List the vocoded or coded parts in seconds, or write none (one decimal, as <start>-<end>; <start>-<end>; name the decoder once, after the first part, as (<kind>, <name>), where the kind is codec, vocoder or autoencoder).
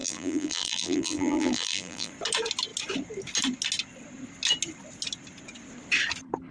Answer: 0.0-2.1 (vocoder, BigVGAN v2)